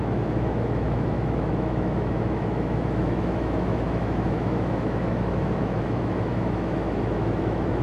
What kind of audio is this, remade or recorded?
remade